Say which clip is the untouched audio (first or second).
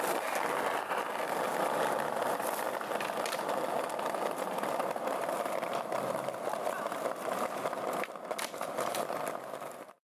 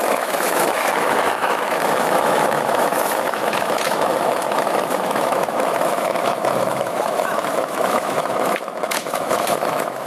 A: first